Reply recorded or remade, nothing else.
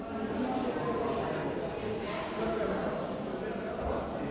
recorded